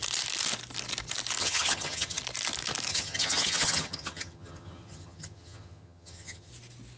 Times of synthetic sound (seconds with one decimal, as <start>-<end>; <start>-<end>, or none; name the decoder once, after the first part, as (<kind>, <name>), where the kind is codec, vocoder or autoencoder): 1.4-2.2 (vocoder, HiFi-GAN); 2.9-6.5

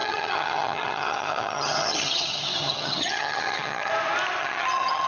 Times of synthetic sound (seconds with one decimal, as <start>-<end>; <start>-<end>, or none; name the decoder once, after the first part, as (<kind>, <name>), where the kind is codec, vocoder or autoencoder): 0.0-3.9 (vocoder, HiFi-GAN); 4.4-5.1

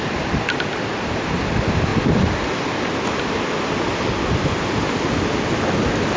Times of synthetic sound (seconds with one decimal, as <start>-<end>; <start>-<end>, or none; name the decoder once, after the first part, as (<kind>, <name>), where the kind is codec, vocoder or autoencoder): none

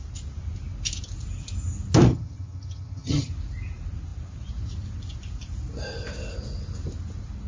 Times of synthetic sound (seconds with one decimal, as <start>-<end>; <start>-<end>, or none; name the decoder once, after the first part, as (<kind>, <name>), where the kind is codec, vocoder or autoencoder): 2.1-3.3 (vocoder, HiFi-GAN)